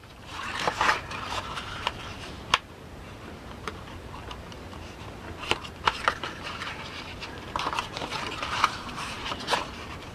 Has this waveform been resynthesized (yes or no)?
yes